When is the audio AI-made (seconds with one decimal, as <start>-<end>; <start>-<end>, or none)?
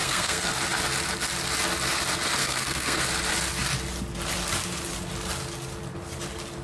0.0-0.5; 2.4-3.0